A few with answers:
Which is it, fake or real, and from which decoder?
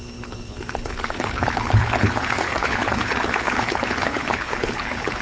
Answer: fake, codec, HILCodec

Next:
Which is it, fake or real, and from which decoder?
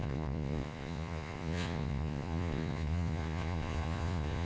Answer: fake, vocoder, Vocos